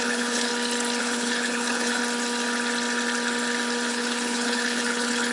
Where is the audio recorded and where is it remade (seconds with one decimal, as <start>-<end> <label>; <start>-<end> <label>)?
0.0-0.5 remade; 0.5-1.0 recorded; 1.0-2.0 remade; 2.0-3.9 recorded; 3.9-5.3 remade